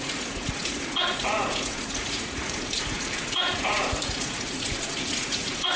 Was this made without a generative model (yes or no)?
no